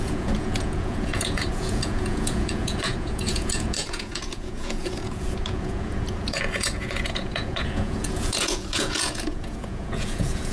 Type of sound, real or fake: fake